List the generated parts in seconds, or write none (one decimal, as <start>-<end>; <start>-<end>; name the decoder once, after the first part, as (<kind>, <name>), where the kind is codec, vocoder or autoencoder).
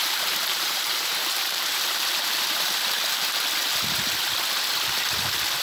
0.0-3.4 (vocoder, BigVGAN v2)